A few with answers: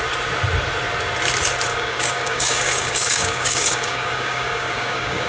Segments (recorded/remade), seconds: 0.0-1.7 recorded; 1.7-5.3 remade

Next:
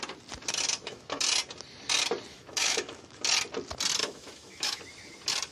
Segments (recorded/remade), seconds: 0.0-0.7 recorded; 0.7-1.2 remade; 1.2-2.3 recorded; 2.3-3.2 remade; 3.2-4.0 recorded; 4.0-4.8 remade; 4.8-5.5 recorded

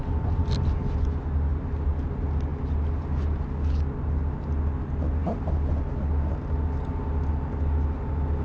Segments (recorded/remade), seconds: 0.0-8.4 recorded

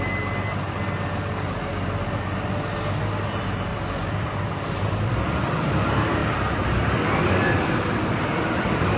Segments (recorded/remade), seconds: 0.0-3.7 recorded; 3.7-5.7 remade; 5.7-6.2 recorded; 6.2-9.0 remade

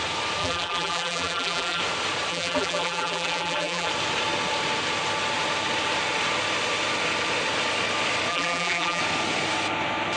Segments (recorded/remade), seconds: 0.0-0.4 recorded; 0.4-1.8 remade; 1.8-2.3 recorded; 2.3-3.9 remade; 3.9-8.3 recorded; 8.3-9.0 remade; 9.0-10.2 recorded

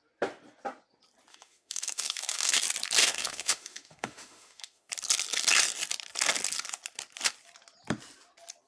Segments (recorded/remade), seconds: 0.0-1.3 recorded; 1.3-2.6 remade; 2.6-3.0 recorded; 3.0-4.9 remade; 4.9-8.7 recorded

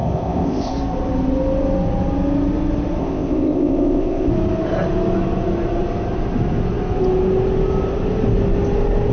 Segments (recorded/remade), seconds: 0.0-0.7 remade; 0.7-3.0 recorded; 3.0-4.3 remade; 4.3-9.1 recorded